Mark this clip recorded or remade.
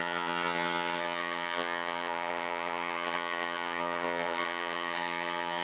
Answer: remade